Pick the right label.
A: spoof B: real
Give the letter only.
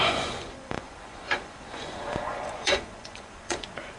A